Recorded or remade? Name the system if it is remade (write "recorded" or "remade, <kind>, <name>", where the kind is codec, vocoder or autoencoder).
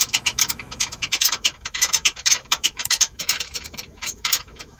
remade, autoencoder, DAC-VAE